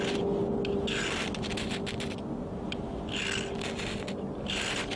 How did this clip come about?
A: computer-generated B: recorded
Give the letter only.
B